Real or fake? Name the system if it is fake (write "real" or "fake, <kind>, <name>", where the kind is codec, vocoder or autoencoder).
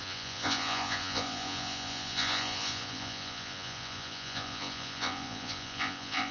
fake, vocoder, Vocos